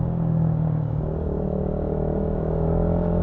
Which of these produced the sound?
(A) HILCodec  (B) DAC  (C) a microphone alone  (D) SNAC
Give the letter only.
B